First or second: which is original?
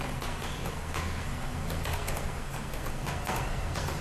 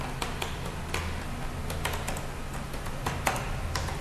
second